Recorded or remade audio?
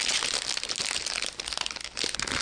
recorded